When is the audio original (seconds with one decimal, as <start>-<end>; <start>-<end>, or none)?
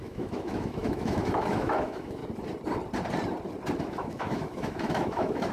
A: 2.2-3.8